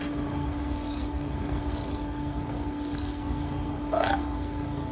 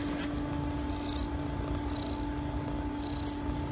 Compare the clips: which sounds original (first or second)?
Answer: second